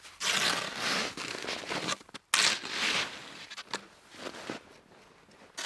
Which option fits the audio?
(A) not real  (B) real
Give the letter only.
B